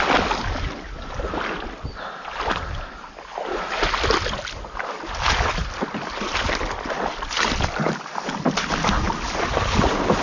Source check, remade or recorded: recorded